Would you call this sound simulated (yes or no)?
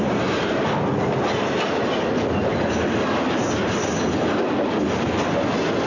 no